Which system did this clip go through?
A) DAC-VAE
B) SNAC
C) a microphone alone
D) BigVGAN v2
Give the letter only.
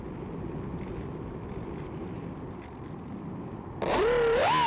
C